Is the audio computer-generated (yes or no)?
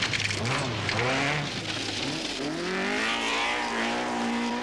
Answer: no